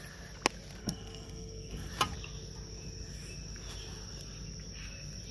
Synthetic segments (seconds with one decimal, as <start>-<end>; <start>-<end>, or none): 0.8-1.9